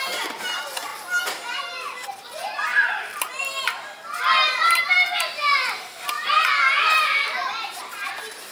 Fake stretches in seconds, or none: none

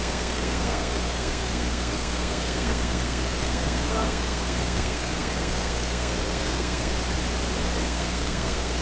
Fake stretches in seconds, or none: 0.0-6.9 (codec, SNAC); 7.8-8.8